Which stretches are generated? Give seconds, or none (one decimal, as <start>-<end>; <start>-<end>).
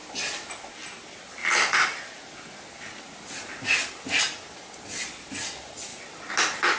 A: none